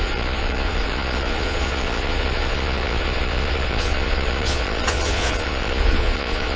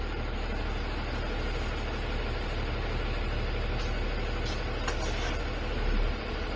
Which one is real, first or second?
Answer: second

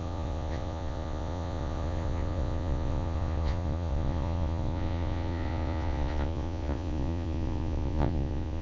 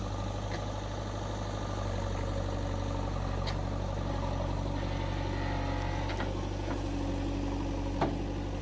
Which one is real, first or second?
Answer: second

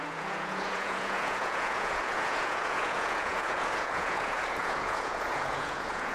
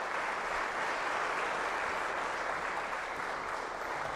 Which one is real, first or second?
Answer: second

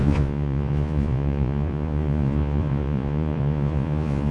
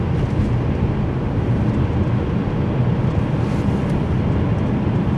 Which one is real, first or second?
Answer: second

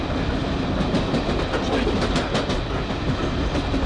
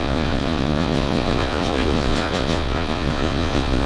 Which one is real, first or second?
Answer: first